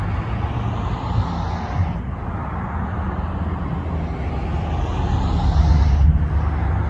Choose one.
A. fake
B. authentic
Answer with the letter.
B